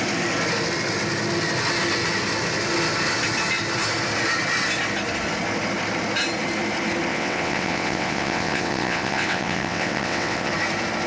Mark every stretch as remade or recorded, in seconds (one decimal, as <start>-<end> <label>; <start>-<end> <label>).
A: 0.0-7.1 recorded; 7.1-10.5 remade; 10.5-11.1 recorded